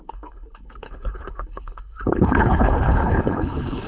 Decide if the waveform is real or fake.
fake